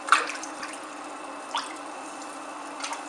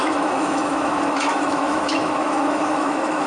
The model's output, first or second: second